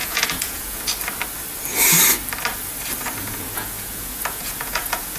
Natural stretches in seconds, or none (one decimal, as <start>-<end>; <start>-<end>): 0.8-3.2